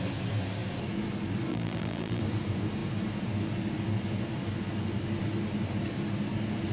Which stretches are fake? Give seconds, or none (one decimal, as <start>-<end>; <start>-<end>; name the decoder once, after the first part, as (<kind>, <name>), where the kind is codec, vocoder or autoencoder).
1.5-2.2 (vocoder, BigVGAN v2)